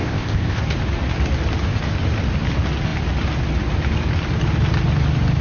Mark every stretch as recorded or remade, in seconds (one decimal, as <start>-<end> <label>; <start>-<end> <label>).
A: 0.0-0.6 remade; 0.6-5.4 recorded